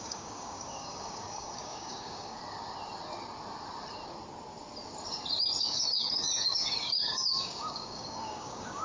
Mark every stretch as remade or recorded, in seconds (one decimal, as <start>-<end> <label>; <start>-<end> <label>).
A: 0.0-2.4 remade; 2.4-5.6 recorded; 5.6-8.8 remade